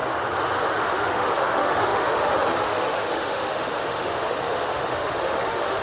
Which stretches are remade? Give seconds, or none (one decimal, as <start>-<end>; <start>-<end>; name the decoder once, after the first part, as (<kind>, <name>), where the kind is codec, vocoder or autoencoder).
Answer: 0.6-5.8 (autoencoder, DAC-VAE)